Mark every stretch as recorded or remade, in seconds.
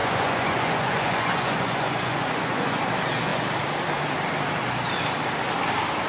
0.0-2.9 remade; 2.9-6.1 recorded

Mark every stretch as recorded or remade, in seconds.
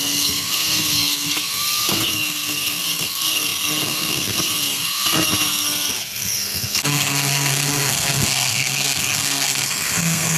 0.0-10.4 remade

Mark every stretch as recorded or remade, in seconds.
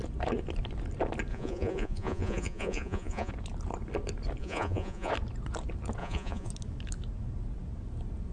0.0-1.3 recorded; 1.3-3.3 remade; 3.3-4.4 recorded; 4.4-5.1 remade; 5.1-6.0 recorded; 6.0-6.5 remade; 6.5-8.3 recorded